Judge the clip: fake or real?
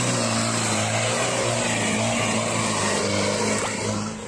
real